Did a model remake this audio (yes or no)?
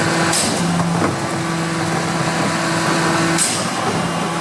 no